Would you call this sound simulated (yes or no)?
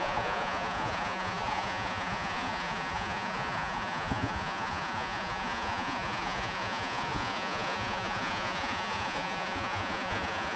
yes